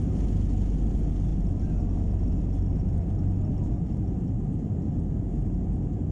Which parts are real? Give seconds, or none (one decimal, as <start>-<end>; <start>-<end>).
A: 0.0-1.3; 1.9-2.7; 5.5-6.1